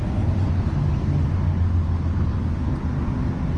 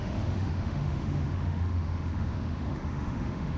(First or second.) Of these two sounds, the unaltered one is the first